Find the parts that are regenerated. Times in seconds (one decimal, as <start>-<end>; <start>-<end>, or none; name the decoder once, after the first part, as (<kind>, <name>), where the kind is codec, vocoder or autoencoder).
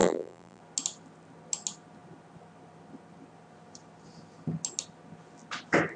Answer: 0.0-0.6 (vocoder, BigVGAN v2)